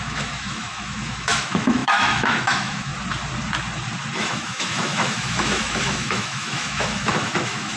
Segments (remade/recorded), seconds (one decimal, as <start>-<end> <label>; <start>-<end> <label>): 0.0-2.9 remade; 2.9-4.1 recorded; 4.1-7.8 remade